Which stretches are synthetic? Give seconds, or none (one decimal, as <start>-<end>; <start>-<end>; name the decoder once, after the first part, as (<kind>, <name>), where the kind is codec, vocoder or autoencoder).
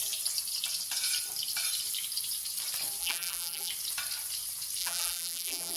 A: 3.0-3.7 (vocoder, BigVGAN v2); 4.8-5.8